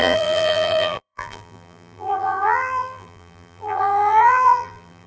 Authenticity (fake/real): fake